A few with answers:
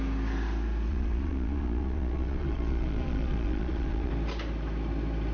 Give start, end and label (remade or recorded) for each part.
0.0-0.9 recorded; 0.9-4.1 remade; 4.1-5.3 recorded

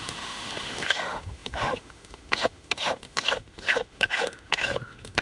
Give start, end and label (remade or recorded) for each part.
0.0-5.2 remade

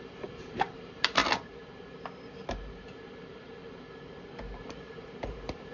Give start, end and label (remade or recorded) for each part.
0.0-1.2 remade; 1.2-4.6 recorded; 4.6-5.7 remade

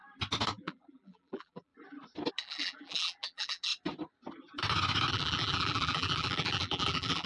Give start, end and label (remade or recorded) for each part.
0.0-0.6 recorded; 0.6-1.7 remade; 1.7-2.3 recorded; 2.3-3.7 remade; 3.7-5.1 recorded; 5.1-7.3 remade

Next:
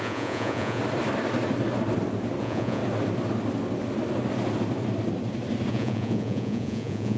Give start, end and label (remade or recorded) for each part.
0.0-0.8 remade; 0.8-2.4 recorded; 2.4-2.8 remade; 2.8-5.7 recorded; 5.7-7.2 remade

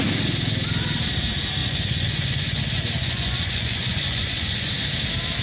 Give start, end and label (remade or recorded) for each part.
0.0-1.6 recorded; 1.6-2.6 remade; 2.6-3.0 recorded; 3.0-4.7 remade; 4.7-5.4 recorded

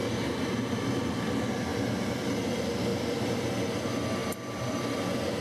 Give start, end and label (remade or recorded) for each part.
0.0-1.7 recorded; 1.7-2.2 remade; 2.2-2.9 recorded; 2.9-3.8 remade; 3.8-4.2 recorded; 4.2-4.7 remade; 4.7-5.4 recorded

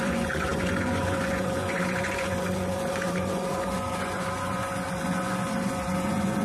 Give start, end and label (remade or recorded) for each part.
0.0-6.4 remade